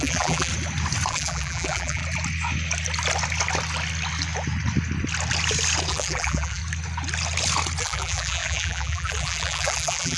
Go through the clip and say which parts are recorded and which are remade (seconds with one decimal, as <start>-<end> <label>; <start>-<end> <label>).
0.0-0.5 remade; 0.5-1.1 recorded; 1.1-2.0 remade; 2.0-5.9 recorded; 5.9-6.6 remade; 6.6-7.8 recorded; 7.8-10.2 remade